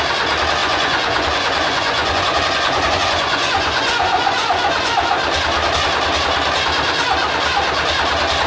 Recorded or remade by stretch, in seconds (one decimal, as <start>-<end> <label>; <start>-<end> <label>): 0.0-0.6 recorded; 0.6-4.8 remade; 4.8-8.5 recorded